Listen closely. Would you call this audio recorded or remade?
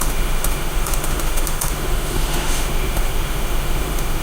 remade